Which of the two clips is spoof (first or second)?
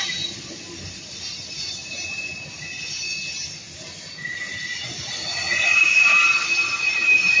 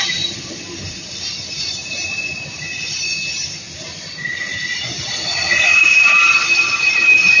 second